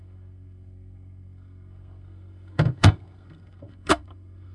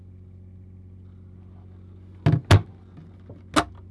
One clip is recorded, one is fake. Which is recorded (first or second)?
second